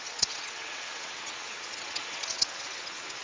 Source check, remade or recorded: remade